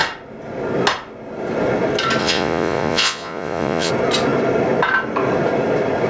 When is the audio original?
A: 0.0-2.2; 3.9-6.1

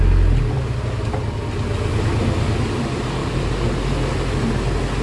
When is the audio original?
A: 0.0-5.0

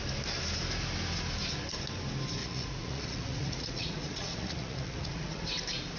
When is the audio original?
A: 0.0-2.4; 5.4-6.0

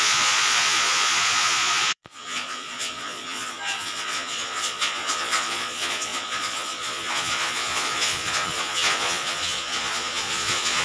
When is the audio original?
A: none

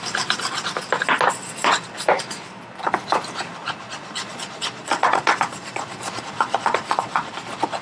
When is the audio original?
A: 0.0-3.6; 7.3-7.8

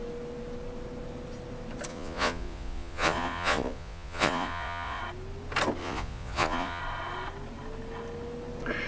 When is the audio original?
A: 0.0-1.9; 5.0-5.8; 6.8-8.9

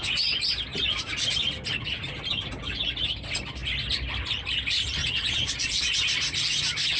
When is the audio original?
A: 0.0-5.0; 5.8-7.0